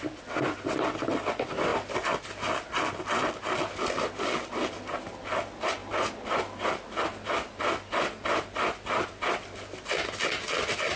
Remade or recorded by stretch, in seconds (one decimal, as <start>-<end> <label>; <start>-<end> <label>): 0.0-11.0 recorded